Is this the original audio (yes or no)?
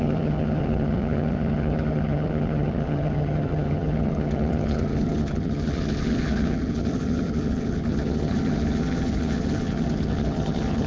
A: no